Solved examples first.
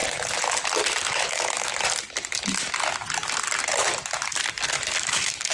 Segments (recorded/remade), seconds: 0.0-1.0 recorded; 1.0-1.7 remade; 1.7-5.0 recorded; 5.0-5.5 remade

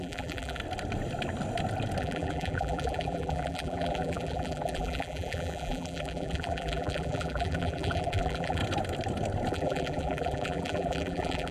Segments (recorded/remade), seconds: 0.0-0.6 remade; 0.6-2.0 recorded; 2.0-8.6 remade; 8.6-9.5 recorded; 9.5-11.5 remade

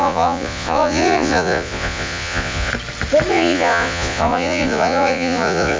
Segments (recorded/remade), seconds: 0.0-2.7 remade; 2.7-3.3 recorded; 3.3-5.8 remade